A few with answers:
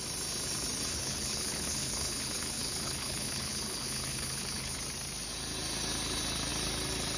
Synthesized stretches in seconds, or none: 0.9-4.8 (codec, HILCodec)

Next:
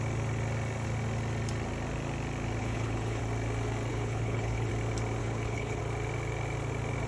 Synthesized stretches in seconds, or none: 2.6-3.2 (codec, HILCodec); 3.9-4.7; 5.2-5.8

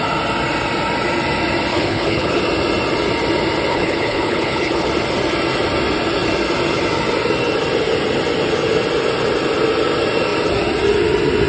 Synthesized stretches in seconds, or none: 1.7-2.4 (codec, HILCodec); 3.7-4.9

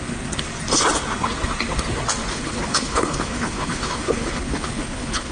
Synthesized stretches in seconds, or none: 2.3-5.3 (codec, HILCodec)

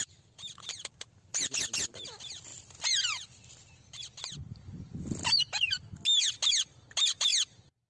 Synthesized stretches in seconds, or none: none

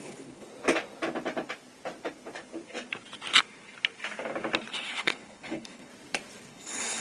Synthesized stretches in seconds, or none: 0.0-0.5 (codec, HILCodec); 4.7-5.9; 6.5-7.0